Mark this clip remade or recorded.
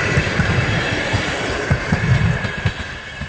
recorded